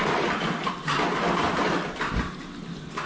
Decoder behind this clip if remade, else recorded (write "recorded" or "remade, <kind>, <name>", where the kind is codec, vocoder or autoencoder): recorded